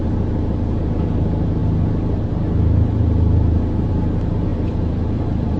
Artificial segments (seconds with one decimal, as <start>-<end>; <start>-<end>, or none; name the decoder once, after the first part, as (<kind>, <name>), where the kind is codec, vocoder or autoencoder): 4.5-5.6 (vocoder, BigVGAN v2)